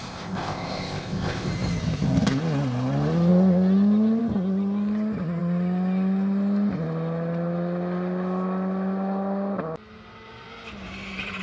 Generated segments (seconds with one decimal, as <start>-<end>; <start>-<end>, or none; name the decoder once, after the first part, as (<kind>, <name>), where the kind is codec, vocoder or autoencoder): 0.0-1.5 (codec, ZipCodec)